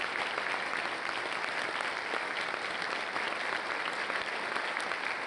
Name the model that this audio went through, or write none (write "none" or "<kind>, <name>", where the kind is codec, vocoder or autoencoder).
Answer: none